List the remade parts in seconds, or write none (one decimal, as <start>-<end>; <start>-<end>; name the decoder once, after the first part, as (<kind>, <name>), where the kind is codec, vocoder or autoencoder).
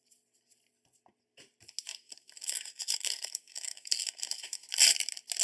1.9-4.7 (codec, SNAC)